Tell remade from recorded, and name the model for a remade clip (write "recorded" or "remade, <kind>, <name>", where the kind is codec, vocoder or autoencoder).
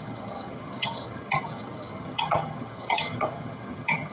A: remade, vocoder, HiFi-GAN